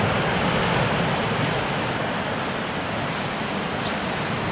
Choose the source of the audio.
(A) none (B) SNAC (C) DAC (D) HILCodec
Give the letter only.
A